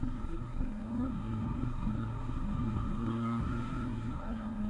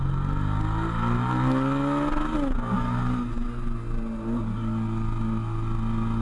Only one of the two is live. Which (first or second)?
second